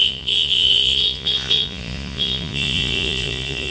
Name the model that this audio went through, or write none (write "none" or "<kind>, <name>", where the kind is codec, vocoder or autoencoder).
vocoder, Vocos